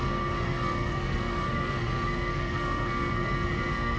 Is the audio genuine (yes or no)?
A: no